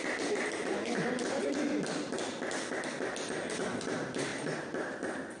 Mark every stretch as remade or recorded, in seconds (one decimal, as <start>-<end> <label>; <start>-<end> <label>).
0.0-5.4 recorded